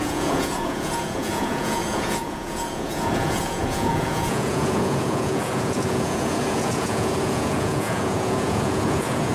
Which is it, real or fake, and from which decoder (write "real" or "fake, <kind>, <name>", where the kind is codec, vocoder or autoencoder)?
fake, vocoder, Vocos